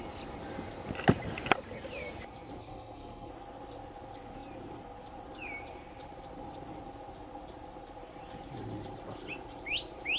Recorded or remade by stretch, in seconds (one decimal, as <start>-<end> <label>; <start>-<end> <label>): 0.0-2.6 recorded; 2.6-3.3 remade; 3.3-10.2 recorded